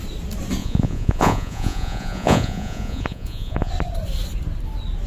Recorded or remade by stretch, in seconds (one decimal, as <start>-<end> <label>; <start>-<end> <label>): 0.0-0.6 recorded; 0.6-3.7 remade; 3.7-5.1 recorded